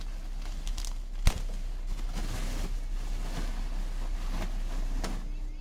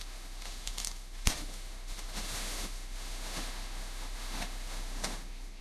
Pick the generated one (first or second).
second